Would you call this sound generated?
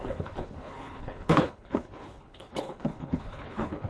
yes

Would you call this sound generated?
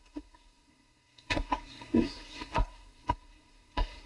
yes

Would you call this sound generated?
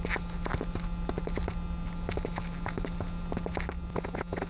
no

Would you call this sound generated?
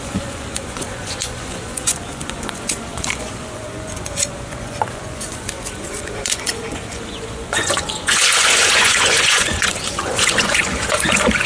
yes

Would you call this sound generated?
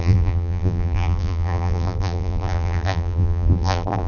yes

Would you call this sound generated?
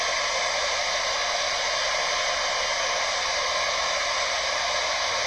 no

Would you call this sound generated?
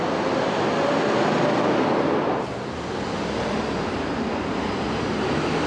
no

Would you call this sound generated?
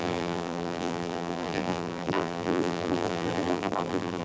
yes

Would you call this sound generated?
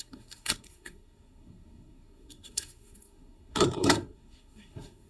yes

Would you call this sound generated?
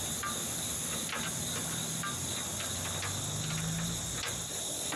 no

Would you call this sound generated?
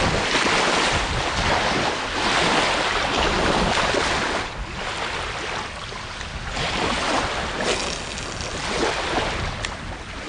no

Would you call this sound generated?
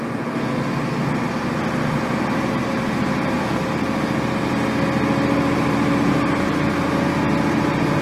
no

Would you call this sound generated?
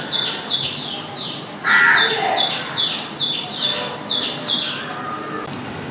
no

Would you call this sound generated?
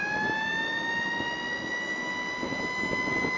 no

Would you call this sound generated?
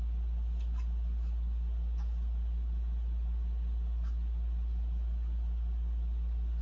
no